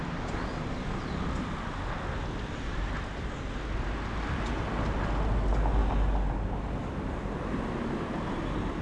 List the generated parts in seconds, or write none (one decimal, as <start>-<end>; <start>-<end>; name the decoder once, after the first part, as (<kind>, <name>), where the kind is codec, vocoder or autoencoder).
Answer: none